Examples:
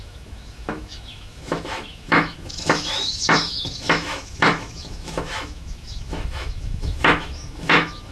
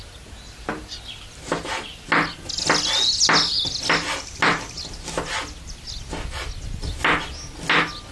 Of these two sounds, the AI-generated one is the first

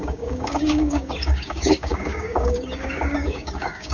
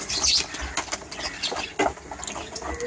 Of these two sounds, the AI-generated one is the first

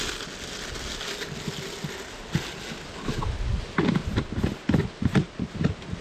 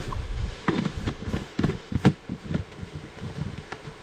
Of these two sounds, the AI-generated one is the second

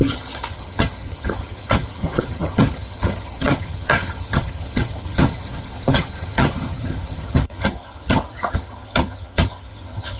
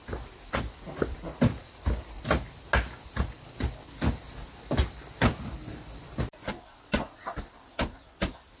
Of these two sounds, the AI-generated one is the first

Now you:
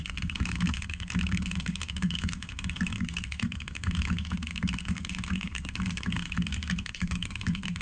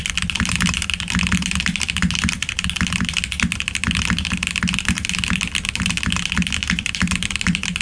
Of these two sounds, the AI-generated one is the first